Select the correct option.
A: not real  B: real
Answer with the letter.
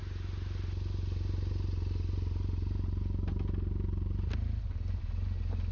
B